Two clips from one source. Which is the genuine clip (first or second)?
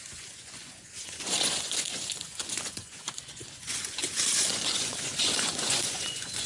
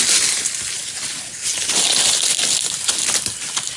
second